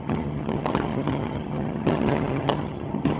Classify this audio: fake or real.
fake